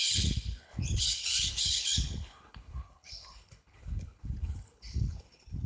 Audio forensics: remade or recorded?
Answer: remade